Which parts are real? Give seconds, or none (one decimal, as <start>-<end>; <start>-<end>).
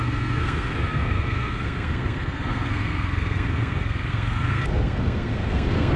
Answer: none